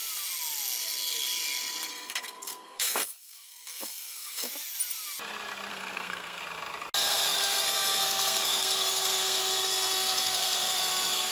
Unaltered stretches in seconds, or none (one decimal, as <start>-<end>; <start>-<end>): 0.0-1.9; 4.5-5.7; 6.4-7.0

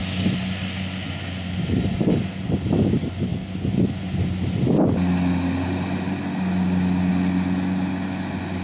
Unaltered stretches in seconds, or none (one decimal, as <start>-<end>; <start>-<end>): 0.0-8.6

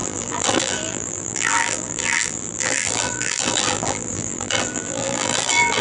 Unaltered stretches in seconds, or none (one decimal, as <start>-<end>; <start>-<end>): none

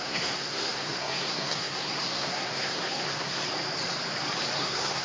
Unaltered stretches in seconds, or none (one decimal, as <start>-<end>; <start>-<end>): 3.4-4.6

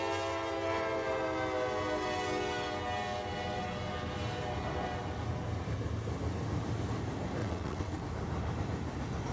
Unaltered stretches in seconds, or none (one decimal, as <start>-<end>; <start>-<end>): 0.0-7.4; 8.0-9.3

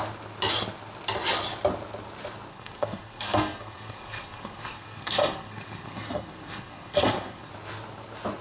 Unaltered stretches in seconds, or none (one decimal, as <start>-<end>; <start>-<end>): 0.0-2.5; 7.5-8.4